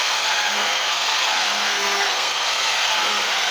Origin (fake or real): fake